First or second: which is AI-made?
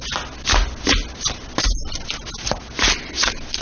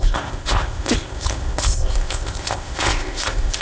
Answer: second